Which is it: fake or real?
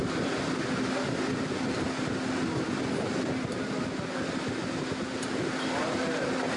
real